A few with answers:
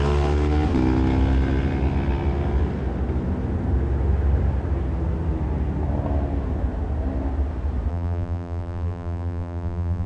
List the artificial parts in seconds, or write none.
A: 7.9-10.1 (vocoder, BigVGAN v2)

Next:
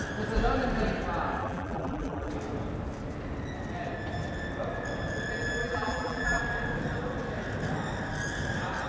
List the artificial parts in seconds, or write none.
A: 1.4-2.3 (vocoder, BigVGAN v2); 5.6-6.4